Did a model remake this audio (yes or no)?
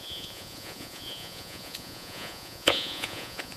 yes